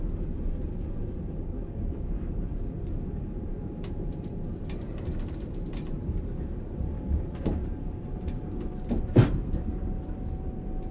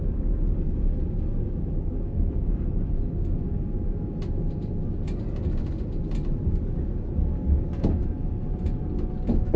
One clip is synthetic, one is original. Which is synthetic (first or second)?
first